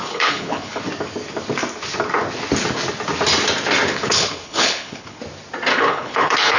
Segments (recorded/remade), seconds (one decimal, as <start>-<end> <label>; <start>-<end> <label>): 0.0-0.8 remade; 0.8-3.9 recorded; 3.9-5.2 remade; 5.2-5.7 recorded; 5.7-6.6 remade